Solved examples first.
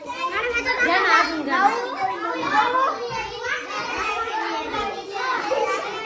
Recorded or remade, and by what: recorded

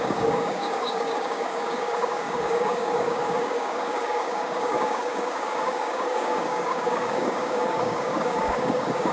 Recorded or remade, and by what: remade, codec, DAC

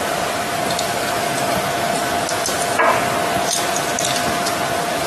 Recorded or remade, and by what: recorded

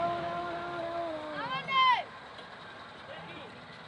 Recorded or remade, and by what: recorded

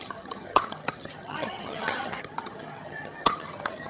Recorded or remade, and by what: remade, vocoder, HiFi-GAN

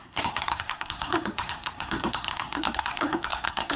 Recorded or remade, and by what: remade, codec, SNAC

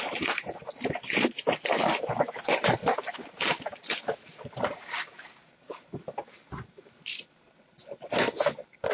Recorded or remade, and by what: remade, vocoder, BigVGAN v2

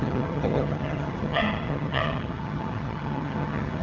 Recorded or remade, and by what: remade, vocoder, HiFi-GAN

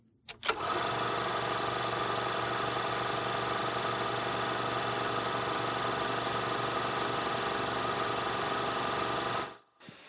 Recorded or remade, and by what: recorded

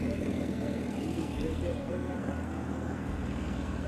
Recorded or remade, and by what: remade, codec, SNAC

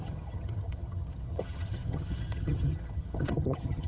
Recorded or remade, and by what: remade, vocoder, HiFi-GAN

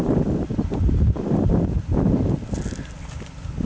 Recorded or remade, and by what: recorded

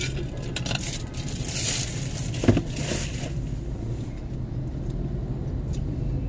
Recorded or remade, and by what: recorded